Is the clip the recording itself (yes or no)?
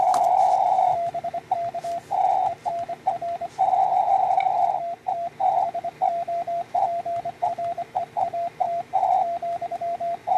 yes